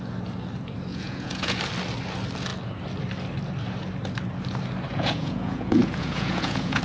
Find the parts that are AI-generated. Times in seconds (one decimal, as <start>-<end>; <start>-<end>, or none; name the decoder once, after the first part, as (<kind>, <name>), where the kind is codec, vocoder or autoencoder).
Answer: 0.9-1.6 (vocoder, Vocos); 4.9-6.8